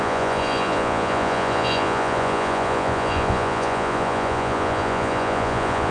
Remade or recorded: remade